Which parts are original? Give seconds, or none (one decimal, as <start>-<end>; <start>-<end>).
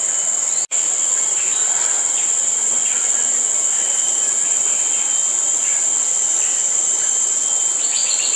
0.0-8.4